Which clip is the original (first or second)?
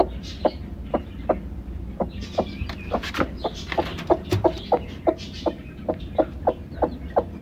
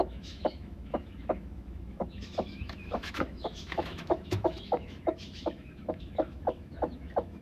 first